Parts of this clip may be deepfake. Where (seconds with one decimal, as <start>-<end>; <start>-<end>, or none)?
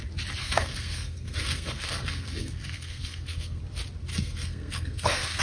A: 0.4-3.6; 4.1-5.4